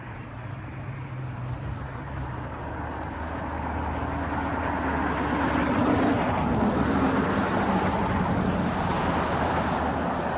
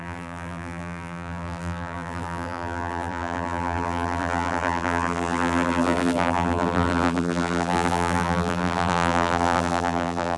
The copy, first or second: second